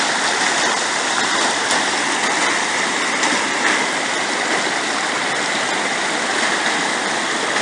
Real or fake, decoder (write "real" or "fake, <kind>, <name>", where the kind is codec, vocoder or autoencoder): real